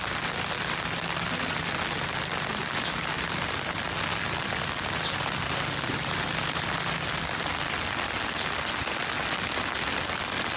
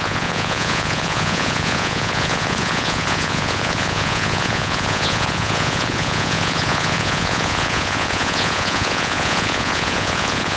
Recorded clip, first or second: first